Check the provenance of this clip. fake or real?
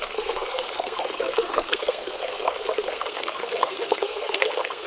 fake